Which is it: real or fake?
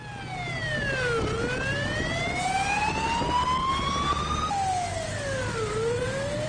real